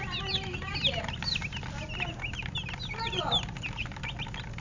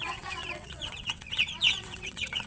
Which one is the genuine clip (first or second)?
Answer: first